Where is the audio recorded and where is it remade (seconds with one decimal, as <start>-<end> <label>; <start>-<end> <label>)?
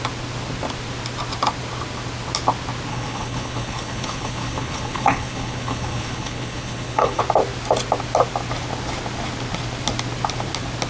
0.0-2.9 recorded; 2.9-7.2 remade; 7.2-10.9 recorded